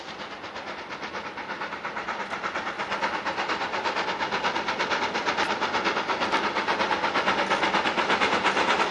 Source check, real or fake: real